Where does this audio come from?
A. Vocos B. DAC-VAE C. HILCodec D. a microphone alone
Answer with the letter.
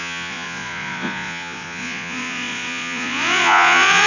A